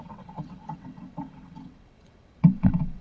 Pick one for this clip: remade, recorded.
remade